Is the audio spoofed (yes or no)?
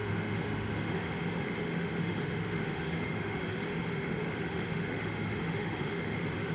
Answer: yes